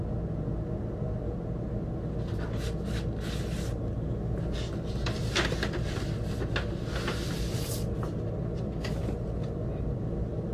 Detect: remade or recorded recorded